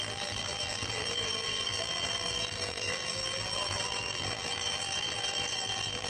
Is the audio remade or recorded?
remade